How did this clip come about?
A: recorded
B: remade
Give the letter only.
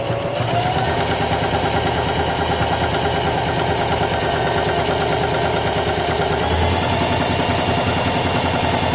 A